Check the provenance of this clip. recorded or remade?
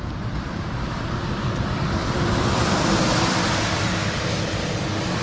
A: remade